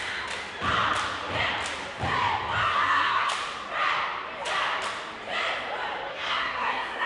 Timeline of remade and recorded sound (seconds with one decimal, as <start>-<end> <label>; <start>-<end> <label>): 0.0-2.6 recorded; 2.6-3.3 remade; 3.3-6.1 recorded; 6.1-7.1 remade